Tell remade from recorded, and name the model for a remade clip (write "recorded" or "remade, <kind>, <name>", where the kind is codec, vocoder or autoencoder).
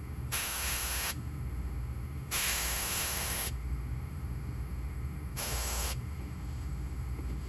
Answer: remade, autoencoder, DAC-VAE